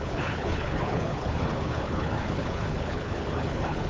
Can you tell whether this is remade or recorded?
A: remade